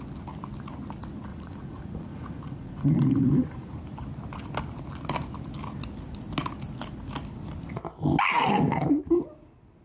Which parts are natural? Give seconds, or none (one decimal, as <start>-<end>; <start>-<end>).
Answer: 0.0-1.3; 3.7-9.8